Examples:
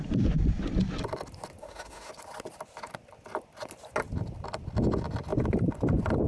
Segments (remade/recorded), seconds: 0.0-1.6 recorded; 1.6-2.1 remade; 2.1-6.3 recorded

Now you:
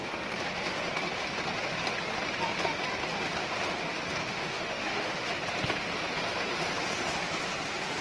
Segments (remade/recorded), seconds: 0.0-4.2 recorded; 4.2-5.3 remade; 5.3-8.0 recorded

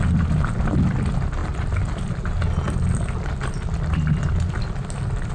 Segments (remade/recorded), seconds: 0.0-5.3 recorded

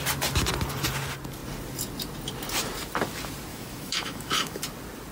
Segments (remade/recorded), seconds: 0.0-3.5 recorded; 3.5-4.6 remade; 4.6-5.1 recorded

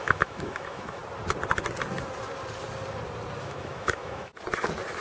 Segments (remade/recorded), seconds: 0.0-1.0 remade; 1.0-3.4 recorded; 3.4-4.3 remade; 4.3-5.0 recorded

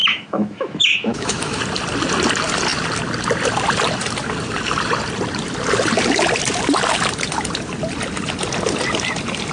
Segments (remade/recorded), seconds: 0.0-1.6 remade; 1.6-9.5 recorded

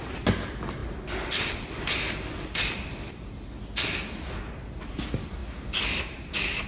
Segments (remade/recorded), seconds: 0.0-6.7 recorded